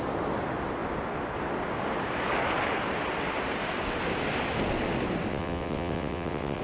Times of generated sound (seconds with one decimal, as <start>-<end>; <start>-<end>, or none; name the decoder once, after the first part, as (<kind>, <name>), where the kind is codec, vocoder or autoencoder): 5.3-6.6 (vocoder, WaveNeXt)